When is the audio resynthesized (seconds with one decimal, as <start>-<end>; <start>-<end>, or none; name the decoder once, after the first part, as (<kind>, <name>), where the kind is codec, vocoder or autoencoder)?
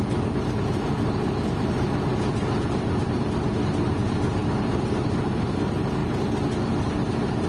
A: none